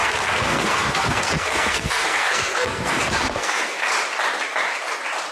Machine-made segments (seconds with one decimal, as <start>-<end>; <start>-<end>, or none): 0.0-3.9